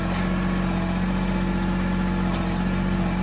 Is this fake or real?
real